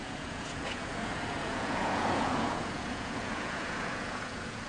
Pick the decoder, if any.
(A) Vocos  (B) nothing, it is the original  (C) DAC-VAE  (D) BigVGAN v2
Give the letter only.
A